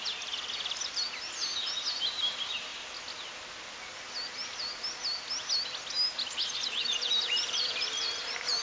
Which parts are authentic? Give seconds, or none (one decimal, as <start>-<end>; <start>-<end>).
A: 0.0-2.1; 2.7-6.6